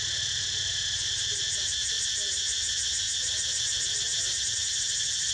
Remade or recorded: remade